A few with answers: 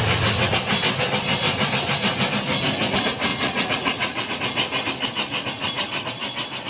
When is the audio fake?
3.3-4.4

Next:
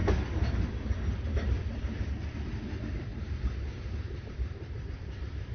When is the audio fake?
1.2-3.1; 4.2-5.5

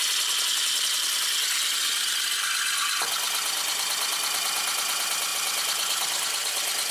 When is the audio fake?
none

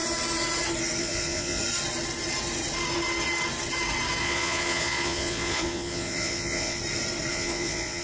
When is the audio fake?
1.0-1.6; 4.2-6.8; 7.3-8.0

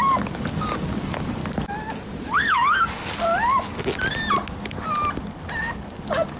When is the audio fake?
0.0-1.4; 2.2-3.3; 5.6-6.4

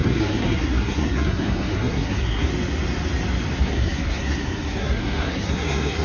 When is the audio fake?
0.0-2.5; 3.6-6.0

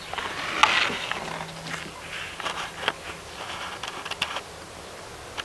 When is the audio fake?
none